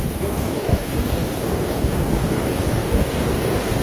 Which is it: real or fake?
fake